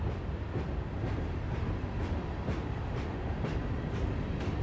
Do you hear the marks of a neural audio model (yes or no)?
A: no